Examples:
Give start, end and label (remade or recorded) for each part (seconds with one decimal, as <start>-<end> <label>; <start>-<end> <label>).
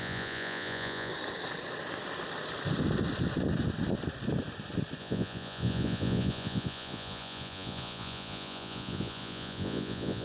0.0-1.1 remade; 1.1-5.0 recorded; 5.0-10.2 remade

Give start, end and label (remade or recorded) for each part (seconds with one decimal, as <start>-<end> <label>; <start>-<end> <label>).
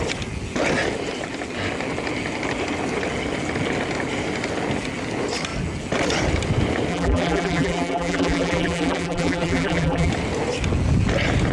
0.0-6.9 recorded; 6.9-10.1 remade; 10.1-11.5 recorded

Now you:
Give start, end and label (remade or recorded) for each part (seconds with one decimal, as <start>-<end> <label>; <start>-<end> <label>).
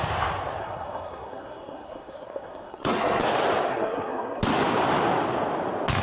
0.0-0.6 recorded; 0.6-3.2 remade; 3.2-3.7 recorded; 3.7-4.4 remade; 4.4-6.0 recorded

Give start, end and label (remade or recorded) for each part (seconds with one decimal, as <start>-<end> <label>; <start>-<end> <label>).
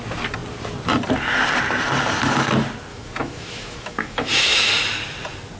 0.0-2.9 recorded; 2.9-4.7 remade; 4.7-5.6 recorded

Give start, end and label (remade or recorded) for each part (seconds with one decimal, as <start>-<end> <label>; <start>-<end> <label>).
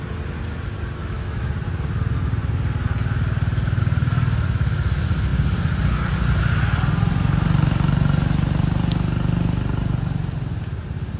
0.0-1.0 recorded; 1.0-1.5 remade; 1.5-11.2 recorded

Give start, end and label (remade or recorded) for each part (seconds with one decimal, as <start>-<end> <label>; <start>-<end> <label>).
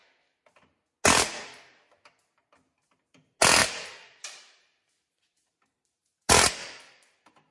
0.0-3.6 recorded; 3.6-6.3 remade; 6.3-7.5 recorded